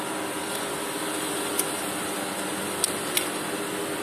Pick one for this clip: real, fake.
real